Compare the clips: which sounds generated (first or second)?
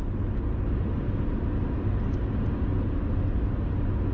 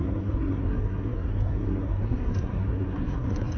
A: second